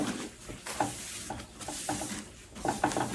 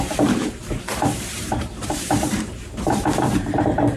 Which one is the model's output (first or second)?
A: second